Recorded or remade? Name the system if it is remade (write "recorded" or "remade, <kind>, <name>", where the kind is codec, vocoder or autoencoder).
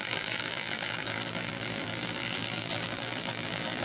remade, vocoder, BigVGAN v2